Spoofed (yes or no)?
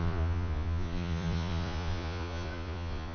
yes